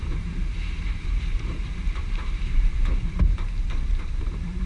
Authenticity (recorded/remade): remade